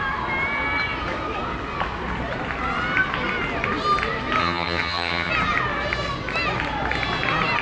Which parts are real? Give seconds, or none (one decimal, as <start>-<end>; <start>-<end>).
0.0-4.4; 5.3-7.6